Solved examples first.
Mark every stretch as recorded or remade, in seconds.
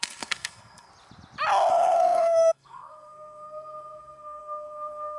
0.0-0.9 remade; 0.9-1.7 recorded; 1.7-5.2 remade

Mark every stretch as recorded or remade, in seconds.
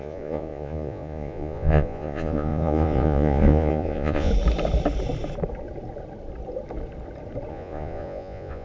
0.0-4.3 remade; 4.3-7.5 recorded; 7.5-8.6 remade